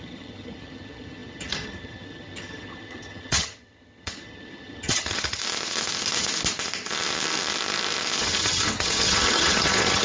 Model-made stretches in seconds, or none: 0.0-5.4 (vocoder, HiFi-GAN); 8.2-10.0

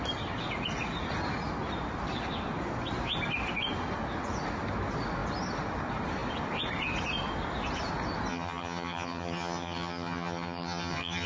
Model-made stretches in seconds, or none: 8.3-11.3 (vocoder, HiFi-GAN)